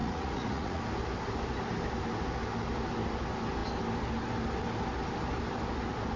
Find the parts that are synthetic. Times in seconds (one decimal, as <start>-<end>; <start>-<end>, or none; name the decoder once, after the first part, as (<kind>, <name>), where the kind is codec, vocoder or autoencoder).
0.0-0.8 (vocoder, Vocos)